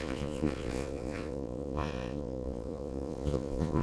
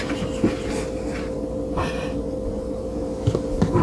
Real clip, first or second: second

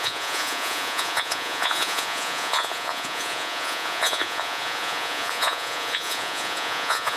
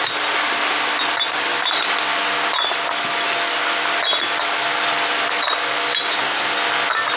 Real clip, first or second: second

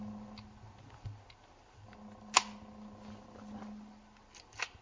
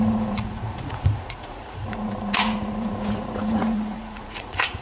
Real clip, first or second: first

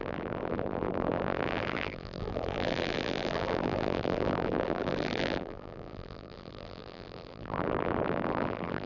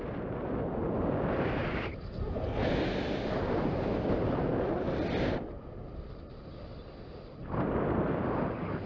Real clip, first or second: second